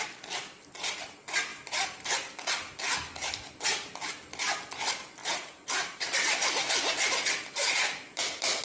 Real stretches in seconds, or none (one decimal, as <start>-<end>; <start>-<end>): 0.0-1.5; 2.1-5.2; 6.3-8.6